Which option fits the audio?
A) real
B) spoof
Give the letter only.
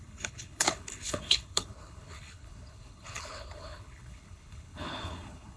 B